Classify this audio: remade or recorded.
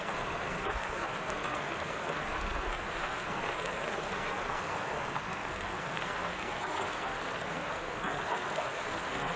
remade